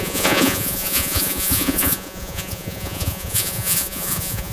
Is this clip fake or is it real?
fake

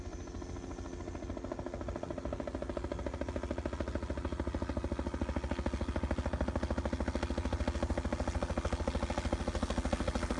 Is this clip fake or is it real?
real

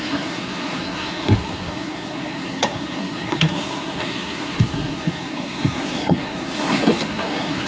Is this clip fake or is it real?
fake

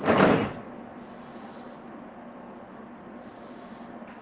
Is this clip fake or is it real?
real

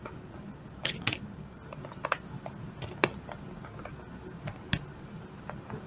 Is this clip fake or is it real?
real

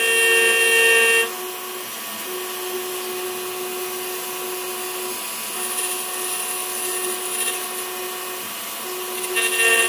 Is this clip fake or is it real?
real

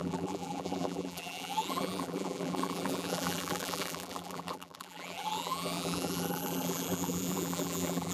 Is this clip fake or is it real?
fake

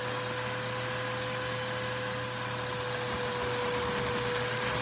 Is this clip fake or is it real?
real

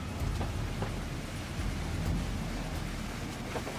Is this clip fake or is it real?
real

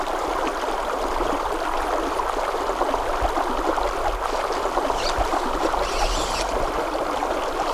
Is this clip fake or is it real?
real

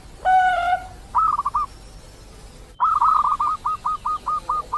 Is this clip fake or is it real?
real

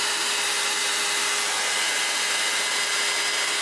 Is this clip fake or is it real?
real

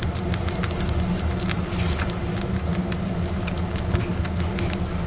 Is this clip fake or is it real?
real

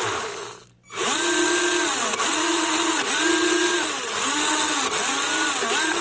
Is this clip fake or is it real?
real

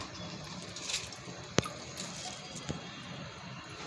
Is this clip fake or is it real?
real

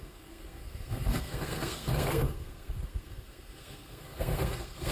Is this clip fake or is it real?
fake